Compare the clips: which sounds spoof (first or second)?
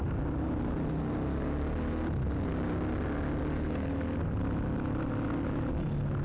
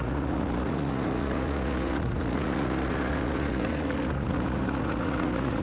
second